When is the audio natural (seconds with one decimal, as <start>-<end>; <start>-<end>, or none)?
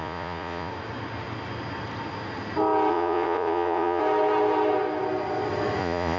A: 0.7-2.9; 4.0-5.8